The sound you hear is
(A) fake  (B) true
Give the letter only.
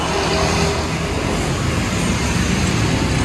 B